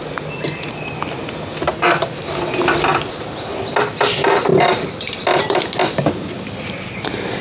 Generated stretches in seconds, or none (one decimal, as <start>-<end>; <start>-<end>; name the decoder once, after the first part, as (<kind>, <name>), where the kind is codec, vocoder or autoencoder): none